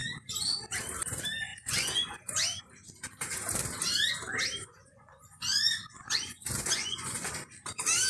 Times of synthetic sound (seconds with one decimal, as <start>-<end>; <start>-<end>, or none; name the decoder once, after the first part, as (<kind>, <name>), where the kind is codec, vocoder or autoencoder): 0.0-0.6 (vocoder, Vocos); 1.5-2.6; 4.6-7.3